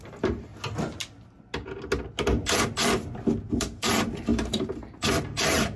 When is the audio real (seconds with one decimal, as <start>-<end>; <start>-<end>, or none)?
0.5-3.5